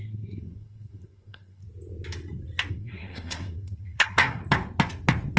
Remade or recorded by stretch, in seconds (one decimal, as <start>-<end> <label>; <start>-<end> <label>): 0.0-1.6 remade; 1.6-2.7 recorded; 2.7-4.4 remade; 4.4-5.4 recorded